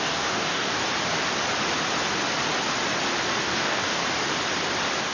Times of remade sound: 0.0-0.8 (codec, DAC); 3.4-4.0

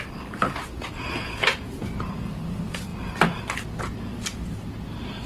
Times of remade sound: none

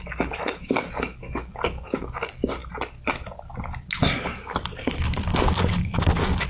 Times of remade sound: 0.0-2.6 (codec, DAC); 4.2-6.5

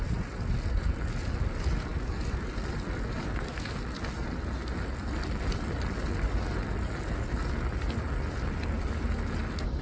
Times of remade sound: none